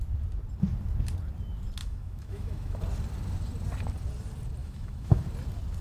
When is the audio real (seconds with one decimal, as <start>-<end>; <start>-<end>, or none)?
0.0-1.8; 2.8-4.6; 5.2-5.8